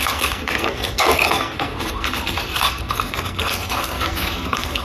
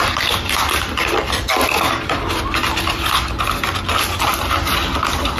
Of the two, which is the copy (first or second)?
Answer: first